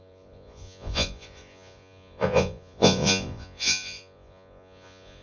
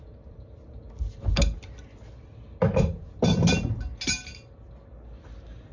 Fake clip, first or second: first